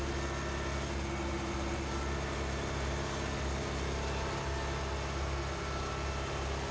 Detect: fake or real real